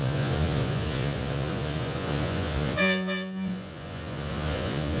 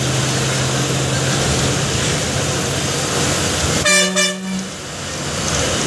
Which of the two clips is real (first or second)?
second